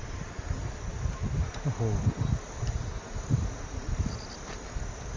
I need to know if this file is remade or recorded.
recorded